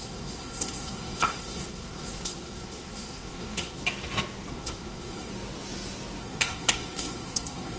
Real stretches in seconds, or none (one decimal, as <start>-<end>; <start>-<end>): 3.8-4.5; 5.3-6.2